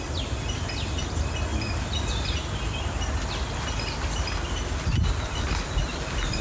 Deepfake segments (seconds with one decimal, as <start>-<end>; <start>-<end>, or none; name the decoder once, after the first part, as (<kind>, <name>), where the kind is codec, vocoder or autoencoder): 0.0-1.5 (vocoder, BigVGAN v2); 5.3-6.4

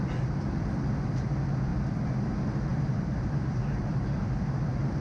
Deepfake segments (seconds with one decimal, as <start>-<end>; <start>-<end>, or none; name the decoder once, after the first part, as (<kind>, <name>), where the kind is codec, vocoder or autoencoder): 2.7-5.0 (vocoder, BigVGAN v2)

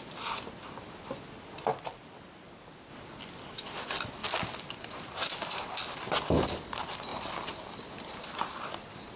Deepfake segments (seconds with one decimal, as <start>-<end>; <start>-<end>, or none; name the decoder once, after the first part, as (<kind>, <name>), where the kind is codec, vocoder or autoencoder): none

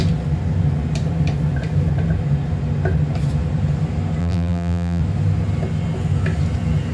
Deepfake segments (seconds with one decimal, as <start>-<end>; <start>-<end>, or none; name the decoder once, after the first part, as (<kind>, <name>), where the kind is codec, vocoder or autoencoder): 4.2-5.0 (vocoder, BigVGAN v2)